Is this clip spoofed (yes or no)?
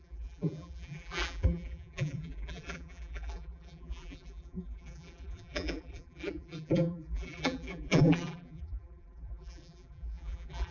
yes